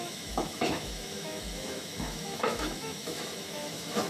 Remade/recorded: remade